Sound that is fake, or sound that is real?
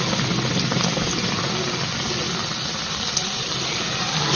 real